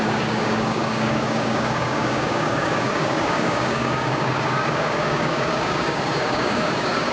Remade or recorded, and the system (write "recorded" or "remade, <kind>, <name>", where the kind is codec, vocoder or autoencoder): remade, codec, DAC